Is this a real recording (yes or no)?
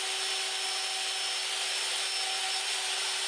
yes